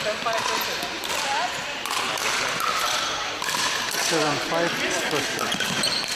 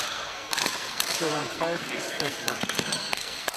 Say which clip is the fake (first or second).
second